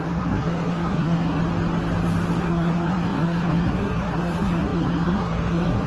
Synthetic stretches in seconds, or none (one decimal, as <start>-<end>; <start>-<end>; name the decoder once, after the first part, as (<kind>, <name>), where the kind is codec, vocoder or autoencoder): 0.0-1.4 (codec, SNAC); 2.4-5.9